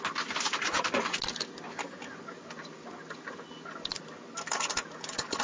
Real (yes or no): yes